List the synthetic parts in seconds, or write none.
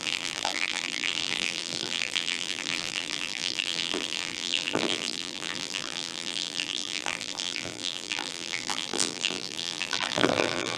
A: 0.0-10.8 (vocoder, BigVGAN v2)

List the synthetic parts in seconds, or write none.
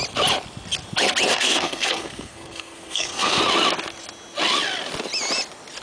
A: 1.3-3.4 (codec, SNAC)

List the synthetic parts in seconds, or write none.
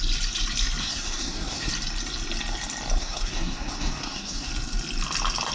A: 0.8-1.7 (codec, SNAC); 3.0-4.5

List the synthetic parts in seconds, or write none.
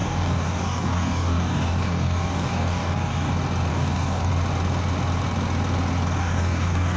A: 0.0-3.3 (codec, DAC); 3.7-4.3; 6.2-7.0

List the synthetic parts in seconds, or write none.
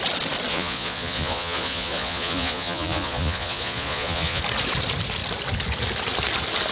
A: 0.5-4.4 (vocoder, Vocos)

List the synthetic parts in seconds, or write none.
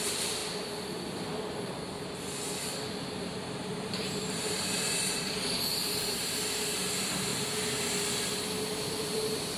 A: 0.0-0.4 (vocoder, BigVGAN v2); 3.2-7.3; 8.6-9.6